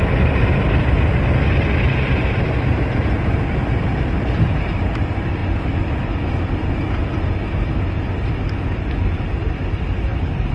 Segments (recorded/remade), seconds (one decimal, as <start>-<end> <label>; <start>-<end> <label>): 0.0-10.5 recorded